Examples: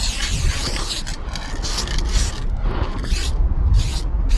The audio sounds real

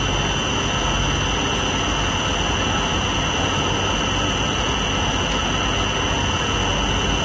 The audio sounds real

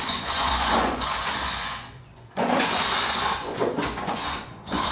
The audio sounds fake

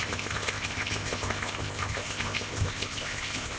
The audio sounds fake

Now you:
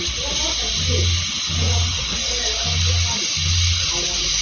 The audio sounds real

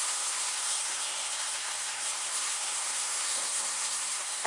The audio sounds fake